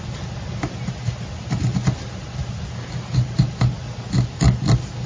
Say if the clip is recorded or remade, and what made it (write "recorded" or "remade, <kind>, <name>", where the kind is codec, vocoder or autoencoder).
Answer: recorded